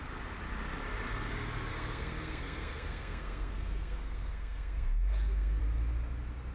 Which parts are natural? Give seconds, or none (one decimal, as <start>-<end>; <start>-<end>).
0.0-1.7; 5.6-6.5